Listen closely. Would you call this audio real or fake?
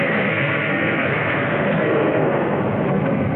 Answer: fake